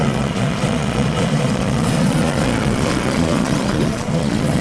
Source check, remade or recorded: remade